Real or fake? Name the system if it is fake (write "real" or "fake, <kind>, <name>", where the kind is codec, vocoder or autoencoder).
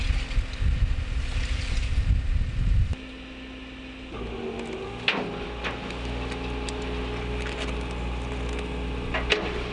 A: real